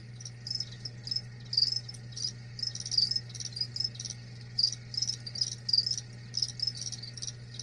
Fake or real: real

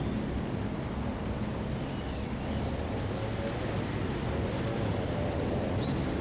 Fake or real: real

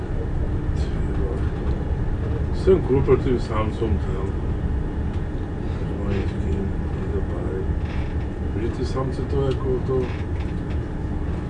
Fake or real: real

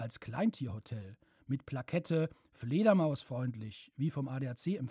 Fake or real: real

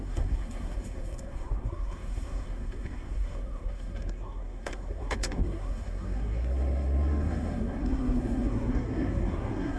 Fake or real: fake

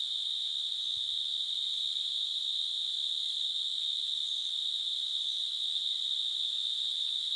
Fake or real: real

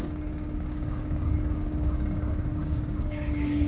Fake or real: fake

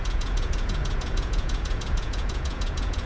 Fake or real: fake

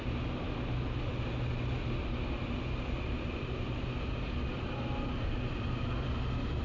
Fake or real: real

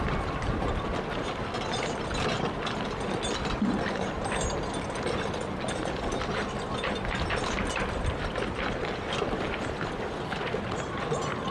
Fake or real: real